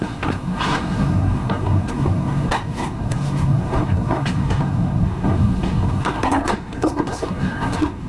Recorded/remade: remade